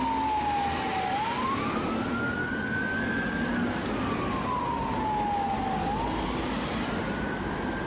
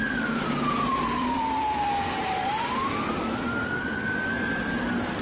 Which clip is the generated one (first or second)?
second